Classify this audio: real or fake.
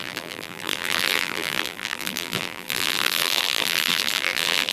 fake